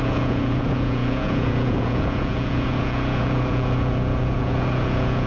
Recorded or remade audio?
remade